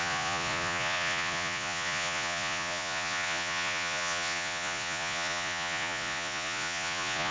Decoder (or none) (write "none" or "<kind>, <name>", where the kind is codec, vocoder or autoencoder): vocoder, Vocos